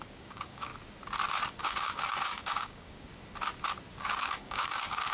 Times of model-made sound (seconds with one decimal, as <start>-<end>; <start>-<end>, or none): 0.0-0.7; 1.6-3.1; 4.0-5.1